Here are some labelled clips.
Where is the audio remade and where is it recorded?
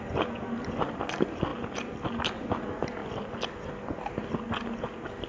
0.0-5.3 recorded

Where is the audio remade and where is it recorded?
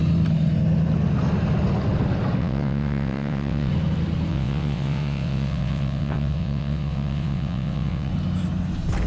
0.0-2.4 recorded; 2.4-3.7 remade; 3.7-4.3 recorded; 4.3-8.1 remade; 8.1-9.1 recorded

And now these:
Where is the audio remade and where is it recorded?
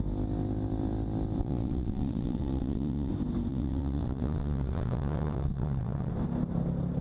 0.0-1.4 recorded; 1.4-3.1 remade; 3.1-3.5 recorded; 3.5-6.1 remade; 6.1-7.0 recorded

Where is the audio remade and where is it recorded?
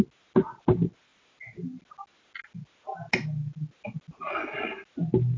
0.0-5.4 recorded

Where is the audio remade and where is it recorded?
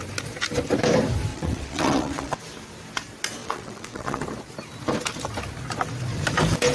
0.0-1.3 recorded; 1.3-2.4 remade; 2.4-3.4 recorded; 3.4-4.2 remade; 4.2-6.7 recorded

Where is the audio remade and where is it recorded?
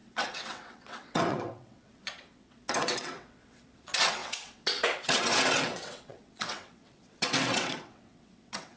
0.0-8.8 remade